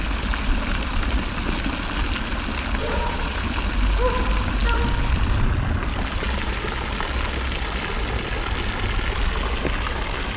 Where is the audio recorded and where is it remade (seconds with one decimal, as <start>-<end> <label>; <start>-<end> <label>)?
0.0-2.8 recorded; 2.8-3.4 remade; 3.4-10.4 recorded